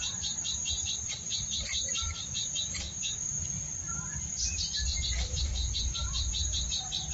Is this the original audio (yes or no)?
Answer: no